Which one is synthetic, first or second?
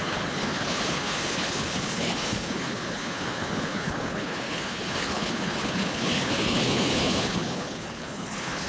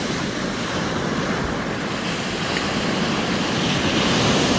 first